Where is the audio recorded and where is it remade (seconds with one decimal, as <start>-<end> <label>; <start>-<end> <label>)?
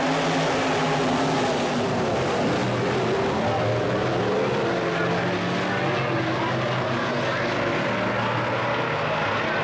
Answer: 0.0-9.6 recorded